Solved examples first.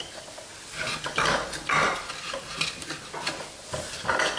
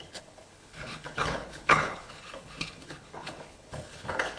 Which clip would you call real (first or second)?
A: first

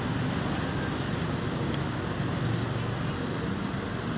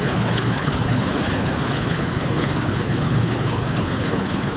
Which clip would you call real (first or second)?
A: first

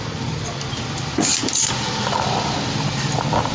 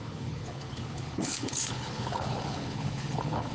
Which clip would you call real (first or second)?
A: first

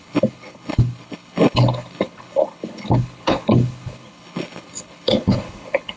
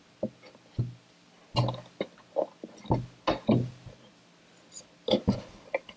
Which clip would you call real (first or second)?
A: second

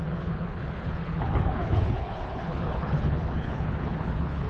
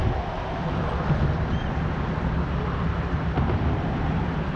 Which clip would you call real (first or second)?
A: second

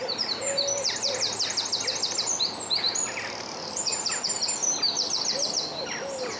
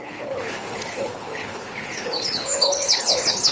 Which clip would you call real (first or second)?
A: first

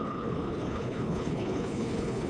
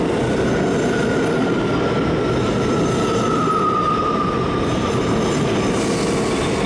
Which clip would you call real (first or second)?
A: second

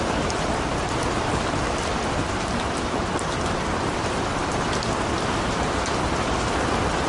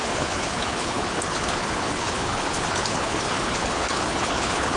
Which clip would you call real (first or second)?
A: first